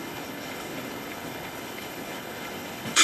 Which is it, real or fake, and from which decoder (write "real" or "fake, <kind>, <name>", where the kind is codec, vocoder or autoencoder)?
fake, codec, HILCodec